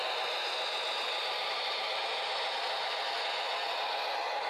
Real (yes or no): yes